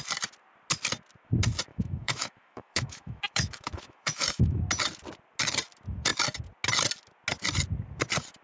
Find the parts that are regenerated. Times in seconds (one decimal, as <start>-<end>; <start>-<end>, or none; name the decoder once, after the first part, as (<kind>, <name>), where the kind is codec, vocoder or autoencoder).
1.7-4.6 (autoencoder, DAC-VAE)